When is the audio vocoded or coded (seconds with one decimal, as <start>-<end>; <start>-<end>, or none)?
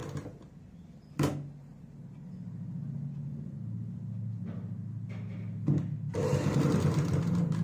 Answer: none